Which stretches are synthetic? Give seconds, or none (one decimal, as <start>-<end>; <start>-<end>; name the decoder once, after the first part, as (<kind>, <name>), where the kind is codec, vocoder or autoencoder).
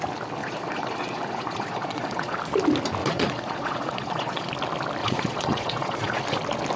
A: 0.4-2.4 (vocoder, Vocos); 3.0-4.5; 5.0-6.2